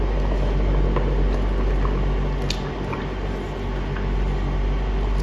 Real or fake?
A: real